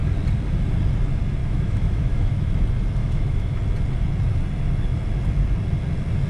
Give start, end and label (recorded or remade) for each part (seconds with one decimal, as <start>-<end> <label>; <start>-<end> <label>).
0.0-1.4 recorded; 1.4-2.5 remade; 2.5-3.0 recorded; 3.0-3.6 remade; 3.6-6.3 recorded